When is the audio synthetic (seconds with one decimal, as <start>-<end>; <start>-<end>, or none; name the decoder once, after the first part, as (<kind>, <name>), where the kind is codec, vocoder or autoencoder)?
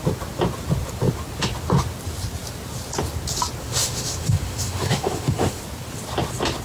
3.6-5.6 (autoencoder, DAC-VAE)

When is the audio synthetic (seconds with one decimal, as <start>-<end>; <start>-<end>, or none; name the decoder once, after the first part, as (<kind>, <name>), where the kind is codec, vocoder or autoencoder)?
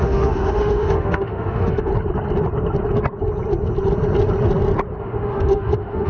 0.0-1.9 (autoencoder, DAC-VAE); 5.0-6.1